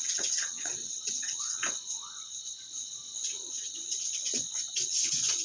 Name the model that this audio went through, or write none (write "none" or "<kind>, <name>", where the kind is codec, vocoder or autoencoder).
vocoder, WaveNeXt